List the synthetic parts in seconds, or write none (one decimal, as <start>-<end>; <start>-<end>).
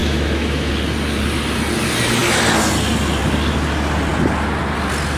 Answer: 0.0-0.7